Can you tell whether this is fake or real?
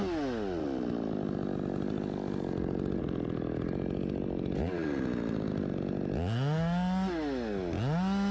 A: real